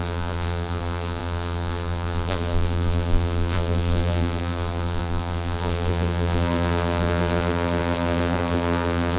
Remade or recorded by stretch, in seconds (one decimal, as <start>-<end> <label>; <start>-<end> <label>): 0.0-9.2 remade